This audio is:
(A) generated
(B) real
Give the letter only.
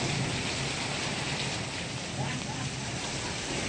B